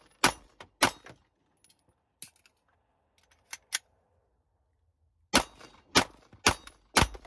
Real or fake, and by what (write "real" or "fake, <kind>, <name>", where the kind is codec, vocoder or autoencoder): real